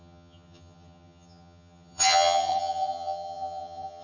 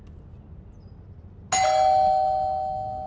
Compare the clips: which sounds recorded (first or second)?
second